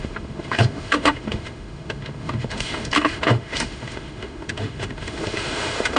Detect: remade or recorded remade